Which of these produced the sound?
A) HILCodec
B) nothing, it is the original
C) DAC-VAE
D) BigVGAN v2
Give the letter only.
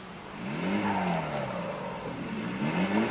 B